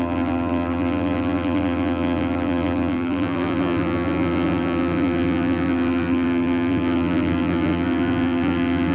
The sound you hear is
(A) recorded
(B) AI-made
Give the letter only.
B